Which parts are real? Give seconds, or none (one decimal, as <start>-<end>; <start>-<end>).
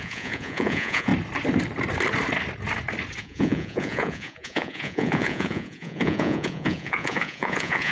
1.1-3.2